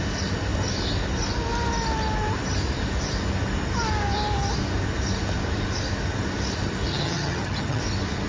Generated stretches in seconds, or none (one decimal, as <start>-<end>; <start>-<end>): 6.9-7.8

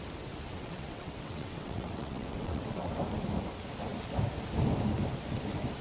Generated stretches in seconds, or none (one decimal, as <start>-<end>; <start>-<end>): 0.5-2.9

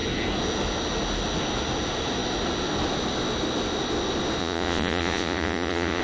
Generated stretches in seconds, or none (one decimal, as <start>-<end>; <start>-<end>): 4.4-6.0

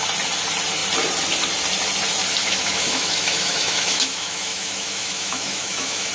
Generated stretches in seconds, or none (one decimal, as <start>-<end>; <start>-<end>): 2.4-6.1

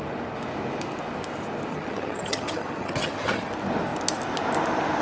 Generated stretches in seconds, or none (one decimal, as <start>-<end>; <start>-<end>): 1.7-3.5

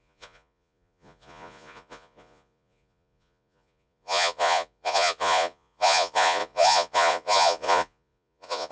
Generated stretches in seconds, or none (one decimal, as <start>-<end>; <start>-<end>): 0.0-8.7